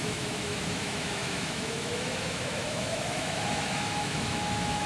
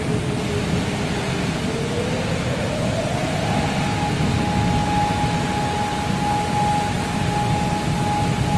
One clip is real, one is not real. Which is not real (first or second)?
first